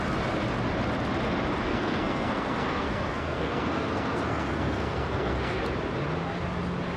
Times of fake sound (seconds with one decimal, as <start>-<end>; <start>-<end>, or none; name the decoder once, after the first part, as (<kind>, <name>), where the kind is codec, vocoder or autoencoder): 1.7-5.6 (codec, SNAC)